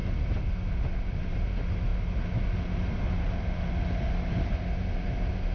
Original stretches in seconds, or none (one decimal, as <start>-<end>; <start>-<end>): 0.0-5.5